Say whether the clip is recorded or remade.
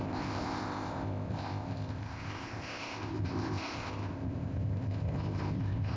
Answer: remade